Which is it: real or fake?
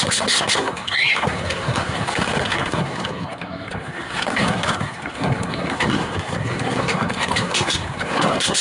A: fake